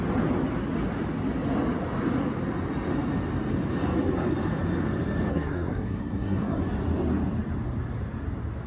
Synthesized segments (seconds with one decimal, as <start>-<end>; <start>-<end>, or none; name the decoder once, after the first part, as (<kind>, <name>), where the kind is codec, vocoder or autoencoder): 5.3-6.6 (codec, SNAC)